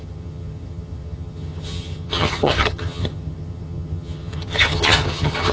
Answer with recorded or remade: remade